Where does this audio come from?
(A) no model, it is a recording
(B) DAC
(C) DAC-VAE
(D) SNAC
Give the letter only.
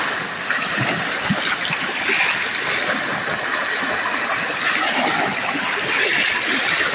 A